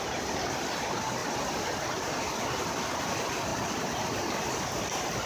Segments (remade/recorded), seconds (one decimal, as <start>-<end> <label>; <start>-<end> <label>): 0.0-5.3 recorded